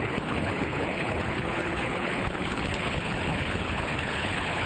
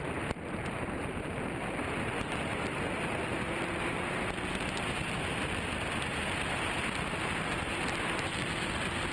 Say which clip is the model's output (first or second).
first